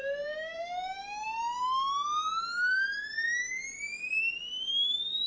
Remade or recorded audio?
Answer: recorded